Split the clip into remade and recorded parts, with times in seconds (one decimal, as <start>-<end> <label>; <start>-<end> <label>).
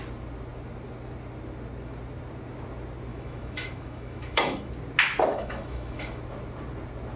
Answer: 0.0-3.1 recorded; 3.1-4.7 remade; 4.7-5.3 recorded; 5.3-6.2 remade; 6.2-7.2 recorded